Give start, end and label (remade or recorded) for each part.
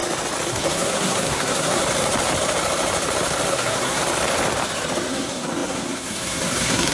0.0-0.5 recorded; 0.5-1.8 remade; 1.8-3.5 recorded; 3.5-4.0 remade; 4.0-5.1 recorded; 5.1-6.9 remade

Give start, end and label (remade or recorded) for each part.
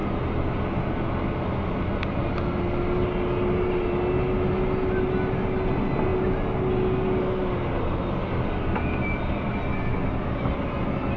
0.0-11.2 recorded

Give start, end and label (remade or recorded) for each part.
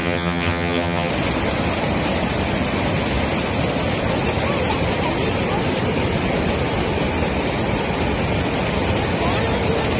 0.0-1.1 remade; 1.1-10.0 recorded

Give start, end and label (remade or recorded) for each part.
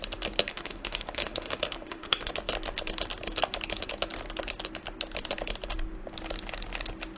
0.0-0.5 recorded; 0.5-2.3 remade; 2.3-7.2 recorded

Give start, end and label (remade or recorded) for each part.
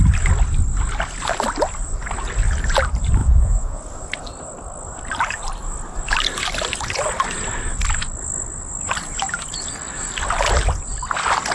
0.0-3.2 recorded; 3.2-3.8 remade; 3.8-11.5 recorded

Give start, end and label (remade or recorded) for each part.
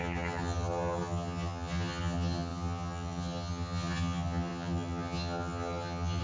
0.0-6.2 remade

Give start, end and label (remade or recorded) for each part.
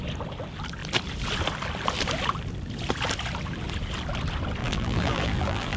0.0-4.6 recorded; 4.6-5.8 remade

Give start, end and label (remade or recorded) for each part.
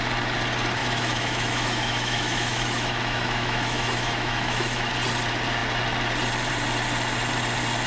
0.0-0.8 recorded; 0.8-4.9 remade; 4.9-7.9 recorded